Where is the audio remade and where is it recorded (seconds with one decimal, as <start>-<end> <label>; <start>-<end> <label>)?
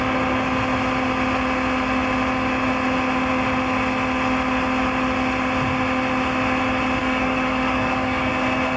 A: 0.0-7.0 recorded; 7.0-8.3 remade; 8.3-8.8 recorded